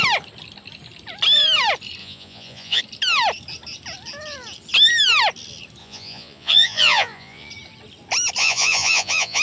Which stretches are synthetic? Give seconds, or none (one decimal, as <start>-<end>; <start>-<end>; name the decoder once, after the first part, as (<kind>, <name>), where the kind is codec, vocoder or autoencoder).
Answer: 2.0-2.8 (vocoder, Vocos); 5.8-7.5; 8.4-9.4